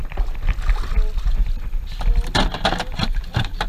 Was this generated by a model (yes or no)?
no